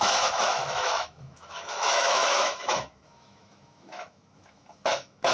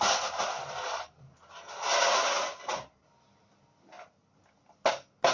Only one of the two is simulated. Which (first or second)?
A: first